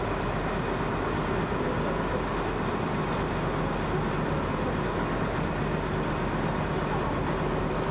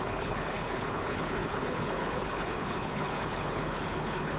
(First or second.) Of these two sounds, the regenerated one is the second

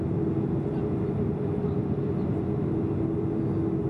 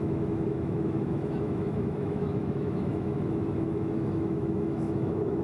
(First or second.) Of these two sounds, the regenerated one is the second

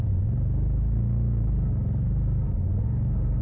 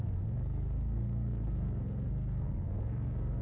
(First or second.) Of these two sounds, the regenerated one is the second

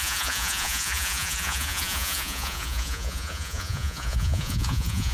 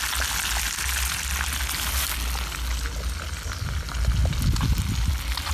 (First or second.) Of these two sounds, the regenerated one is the first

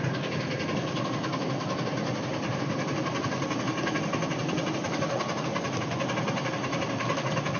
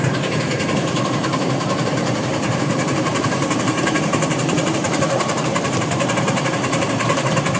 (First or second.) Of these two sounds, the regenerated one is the second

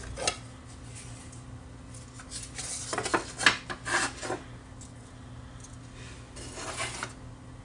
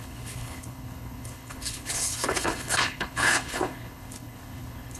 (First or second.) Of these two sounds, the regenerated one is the second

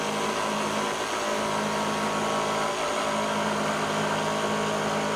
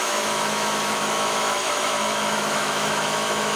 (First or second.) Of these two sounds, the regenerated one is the second